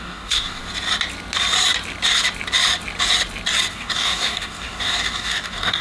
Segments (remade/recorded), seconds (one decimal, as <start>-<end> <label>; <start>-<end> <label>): 0.0-0.6 remade; 0.6-3.7 recorded; 3.7-5.8 remade